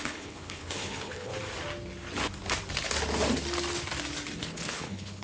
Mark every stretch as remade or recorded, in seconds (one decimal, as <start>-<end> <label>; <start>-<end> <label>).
0.0-1.3 remade; 1.3-4.4 recorded; 4.4-5.2 remade